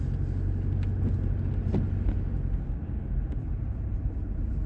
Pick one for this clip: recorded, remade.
recorded